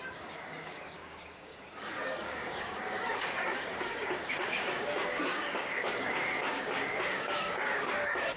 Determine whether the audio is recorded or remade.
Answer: remade